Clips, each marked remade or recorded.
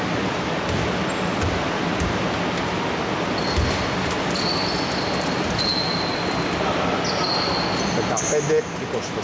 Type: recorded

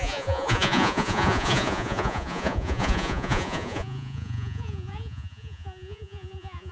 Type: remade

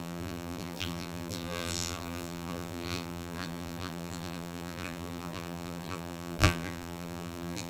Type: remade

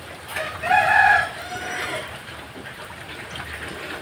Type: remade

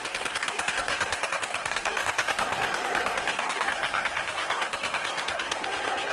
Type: remade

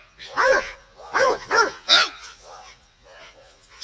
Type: remade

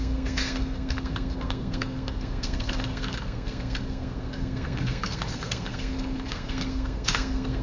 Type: remade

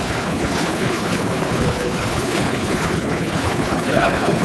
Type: remade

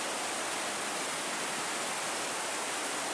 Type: recorded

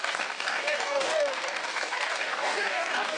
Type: remade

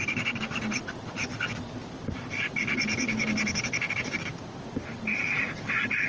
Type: recorded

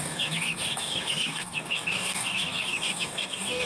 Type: remade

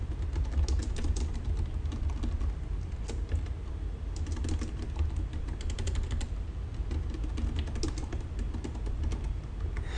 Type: recorded